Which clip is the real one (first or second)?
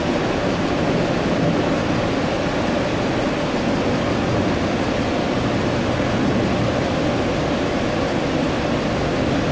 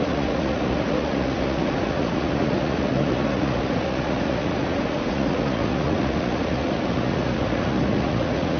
first